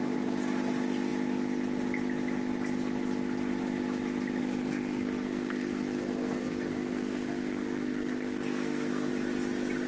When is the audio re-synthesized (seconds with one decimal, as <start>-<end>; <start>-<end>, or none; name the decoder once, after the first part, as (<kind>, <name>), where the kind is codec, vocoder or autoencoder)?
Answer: 4.4-9.1 (codec, SNAC)